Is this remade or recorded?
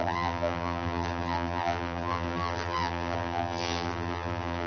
remade